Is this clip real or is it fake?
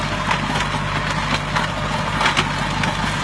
real